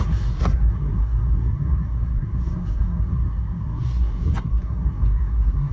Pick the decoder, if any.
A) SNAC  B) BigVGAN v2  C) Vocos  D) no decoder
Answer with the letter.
A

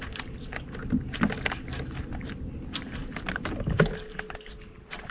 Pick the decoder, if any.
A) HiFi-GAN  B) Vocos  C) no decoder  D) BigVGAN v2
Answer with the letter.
C